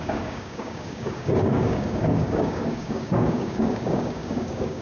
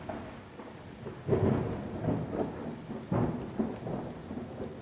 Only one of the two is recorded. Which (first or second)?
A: second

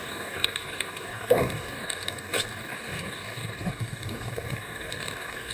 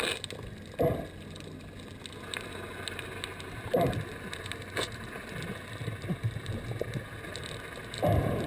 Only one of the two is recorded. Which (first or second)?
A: second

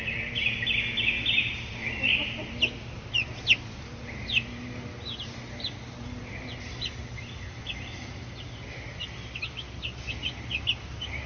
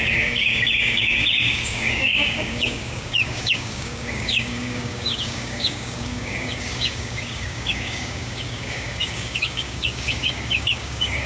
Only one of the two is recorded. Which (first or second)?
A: first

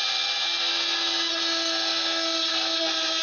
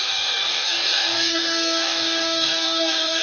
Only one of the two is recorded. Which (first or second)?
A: first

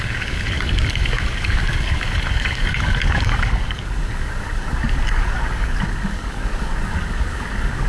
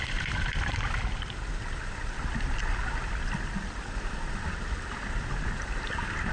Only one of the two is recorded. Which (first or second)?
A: second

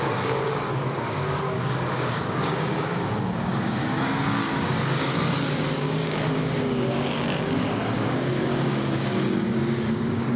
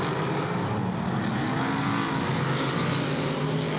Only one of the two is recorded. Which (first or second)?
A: second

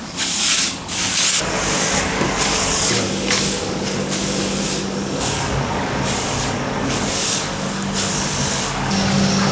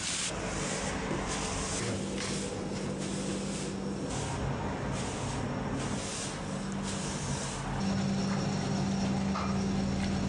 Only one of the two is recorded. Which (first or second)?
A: second